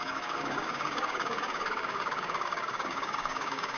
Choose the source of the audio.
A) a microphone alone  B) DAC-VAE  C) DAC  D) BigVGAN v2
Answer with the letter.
C